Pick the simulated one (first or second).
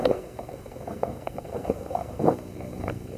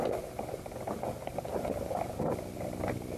first